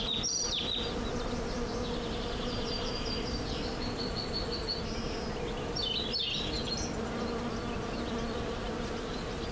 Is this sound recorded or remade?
recorded